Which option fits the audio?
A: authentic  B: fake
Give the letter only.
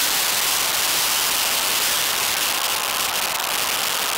A